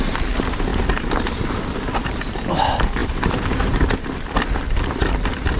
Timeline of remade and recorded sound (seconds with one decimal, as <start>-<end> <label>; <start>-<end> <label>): 0.0-0.7 remade; 0.7-2.4 recorded; 2.4-5.6 remade